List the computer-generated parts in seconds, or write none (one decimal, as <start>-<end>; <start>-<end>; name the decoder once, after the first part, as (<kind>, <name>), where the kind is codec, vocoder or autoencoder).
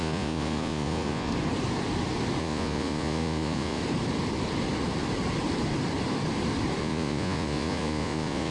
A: 0.0-1.3 (vocoder, Vocos); 2.4-3.8; 6.8-8.5